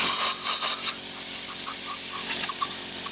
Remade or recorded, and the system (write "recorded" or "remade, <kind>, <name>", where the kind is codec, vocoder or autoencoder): recorded